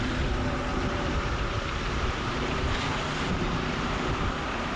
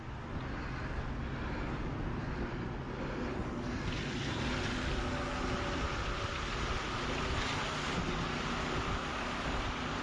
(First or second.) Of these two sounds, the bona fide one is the second